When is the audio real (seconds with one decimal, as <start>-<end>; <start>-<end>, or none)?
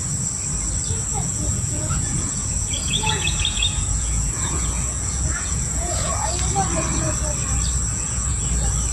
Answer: 0.0-1.1; 6.1-7.9; 8.5-8.9